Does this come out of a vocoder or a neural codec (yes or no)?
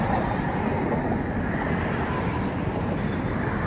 no